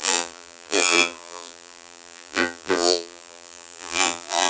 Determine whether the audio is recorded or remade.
remade